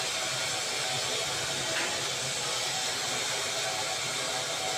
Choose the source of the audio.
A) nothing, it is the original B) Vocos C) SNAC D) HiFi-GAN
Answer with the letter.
A